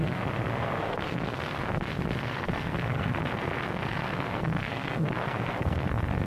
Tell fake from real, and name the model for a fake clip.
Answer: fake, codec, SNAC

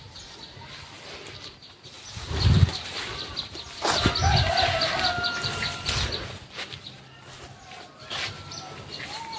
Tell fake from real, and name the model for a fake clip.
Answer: real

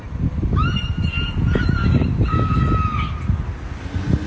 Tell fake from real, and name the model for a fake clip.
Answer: real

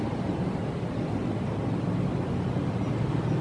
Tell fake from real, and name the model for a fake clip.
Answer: real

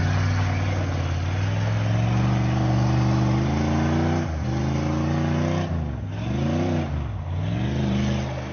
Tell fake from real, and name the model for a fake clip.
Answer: real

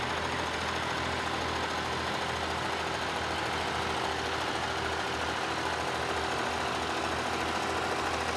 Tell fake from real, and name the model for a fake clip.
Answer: real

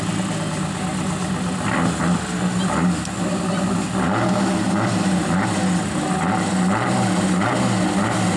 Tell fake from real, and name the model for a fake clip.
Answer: real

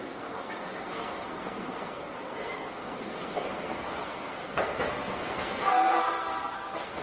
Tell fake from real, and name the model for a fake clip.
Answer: fake, codec, SNAC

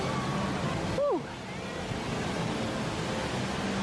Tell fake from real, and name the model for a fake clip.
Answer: real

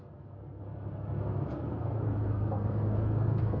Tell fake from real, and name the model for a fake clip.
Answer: fake, codec, SNAC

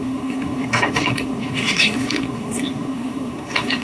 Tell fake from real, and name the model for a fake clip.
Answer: fake, codec, SNAC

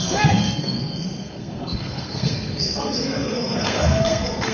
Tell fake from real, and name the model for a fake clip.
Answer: fake, codec, SNAC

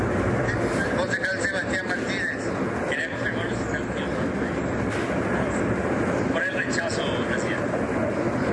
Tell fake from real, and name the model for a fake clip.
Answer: real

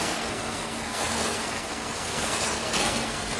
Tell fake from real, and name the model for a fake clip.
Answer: fake, codec, SNAC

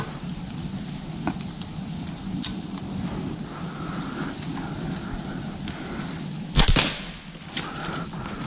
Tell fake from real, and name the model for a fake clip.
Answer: real